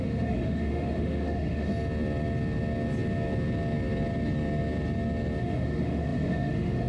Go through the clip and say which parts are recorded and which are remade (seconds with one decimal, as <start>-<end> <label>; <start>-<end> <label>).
0.0-1.7 remade; 1.7-5.4 recorded; 5.4-6.9 remade